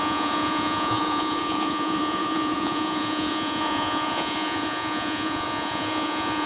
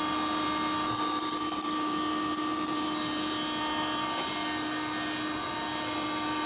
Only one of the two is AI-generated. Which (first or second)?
first